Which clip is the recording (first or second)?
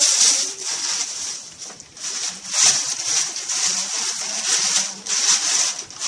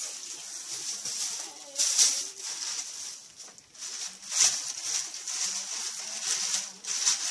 second